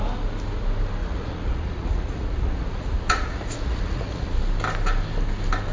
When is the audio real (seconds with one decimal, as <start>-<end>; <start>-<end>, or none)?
0.0-1.0; 4.4-5.7